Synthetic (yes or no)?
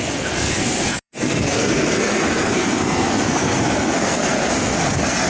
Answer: yes